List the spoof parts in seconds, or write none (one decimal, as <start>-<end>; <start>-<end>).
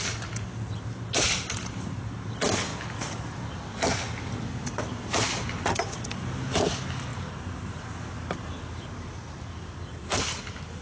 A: none